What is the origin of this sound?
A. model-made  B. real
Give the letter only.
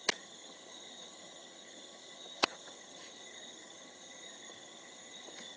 A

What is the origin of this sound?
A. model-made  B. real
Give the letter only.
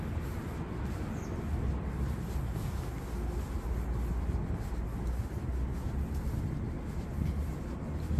B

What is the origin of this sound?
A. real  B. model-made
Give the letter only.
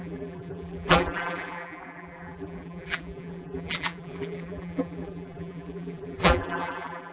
B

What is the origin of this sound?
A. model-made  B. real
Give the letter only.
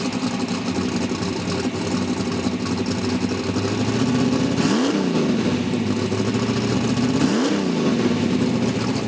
B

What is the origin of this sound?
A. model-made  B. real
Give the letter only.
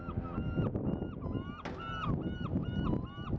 B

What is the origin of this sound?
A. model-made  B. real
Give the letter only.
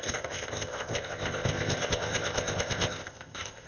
A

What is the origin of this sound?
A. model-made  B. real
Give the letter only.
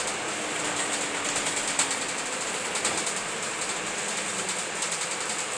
B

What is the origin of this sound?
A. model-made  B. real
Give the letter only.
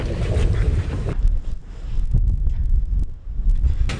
B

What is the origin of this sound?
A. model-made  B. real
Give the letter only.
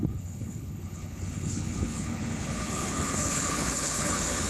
A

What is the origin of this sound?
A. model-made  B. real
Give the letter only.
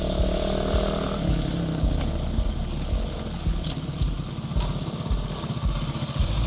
B